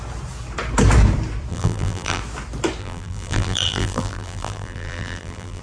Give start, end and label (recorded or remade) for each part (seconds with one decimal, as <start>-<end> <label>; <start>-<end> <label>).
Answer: 0.0-1.5 recorded; 1.5-2.2 remade; 2.2-2.8 recorded; 2.8-5.6 remade